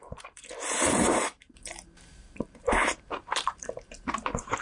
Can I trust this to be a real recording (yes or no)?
no